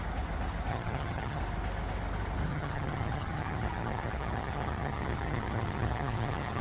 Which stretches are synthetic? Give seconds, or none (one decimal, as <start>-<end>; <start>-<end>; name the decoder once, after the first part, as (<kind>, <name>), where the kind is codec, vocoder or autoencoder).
0.7-1.4 (vocoder, HiFi-GAN); 2.5-6.6